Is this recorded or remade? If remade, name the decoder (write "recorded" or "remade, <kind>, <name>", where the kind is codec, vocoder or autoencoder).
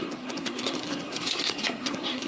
remade, codec, SNAC